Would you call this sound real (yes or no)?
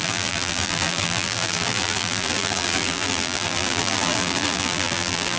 no